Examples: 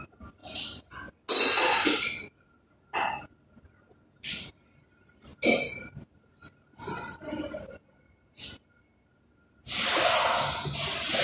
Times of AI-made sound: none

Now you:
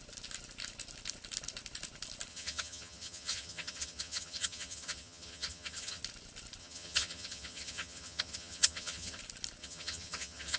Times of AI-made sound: 2.3-6.0; 6.6-9.2; 9.6-10.6

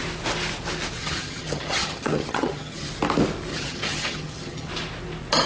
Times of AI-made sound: 1.0-2.9; 3.5-4.7

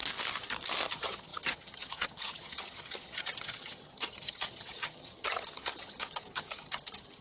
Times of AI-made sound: 0.9-7.2